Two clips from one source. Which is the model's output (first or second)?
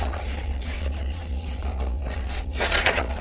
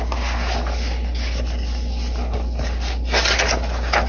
first